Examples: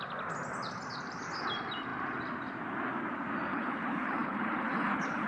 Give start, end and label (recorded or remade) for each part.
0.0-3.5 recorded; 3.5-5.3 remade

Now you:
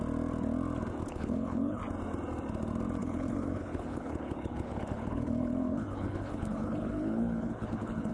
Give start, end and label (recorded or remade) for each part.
0.0-1.1 recorded; 1.1-1.8 remade; 1.8-3.0 recorded; 3.0-8.1 remade

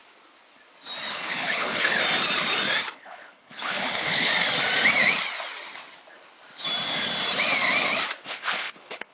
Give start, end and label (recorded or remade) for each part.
0.0-1.1 recorded; 1.1-2.0 remade; 2.0-2.9 recorded; 2.9-4.3 remade; 4.3-8.3 recorded; 8.3-9.1 remade

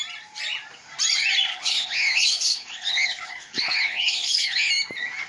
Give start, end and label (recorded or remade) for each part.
0.0-1.5 recorded; 1.5-4.7 remade; 4.7-5.3 recorded